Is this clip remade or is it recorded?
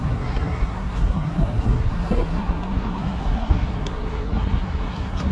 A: remade